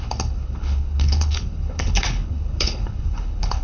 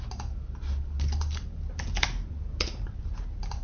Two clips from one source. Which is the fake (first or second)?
first